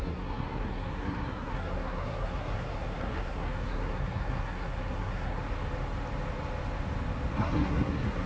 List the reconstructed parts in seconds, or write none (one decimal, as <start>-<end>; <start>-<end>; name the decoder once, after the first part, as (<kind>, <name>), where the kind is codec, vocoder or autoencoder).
0.0-5.4 (codec, SNAC); 7.3-8.3